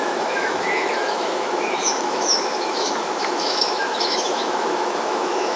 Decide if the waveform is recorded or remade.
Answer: remade